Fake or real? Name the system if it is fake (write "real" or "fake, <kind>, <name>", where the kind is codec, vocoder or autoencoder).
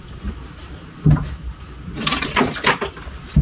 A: real